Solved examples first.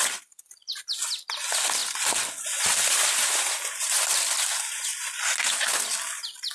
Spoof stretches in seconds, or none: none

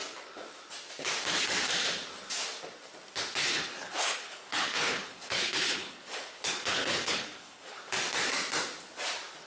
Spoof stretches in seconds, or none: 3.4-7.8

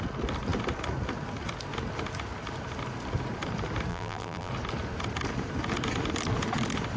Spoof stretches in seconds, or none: 3.9-4.5

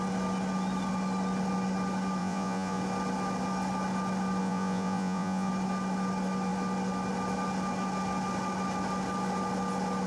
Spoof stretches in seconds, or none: 2.2-2.8; 4.4-5.5

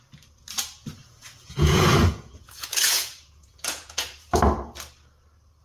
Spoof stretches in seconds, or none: 1.0-4.4

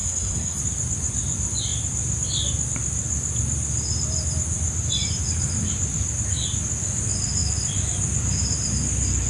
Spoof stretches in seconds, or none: 0.0-0.6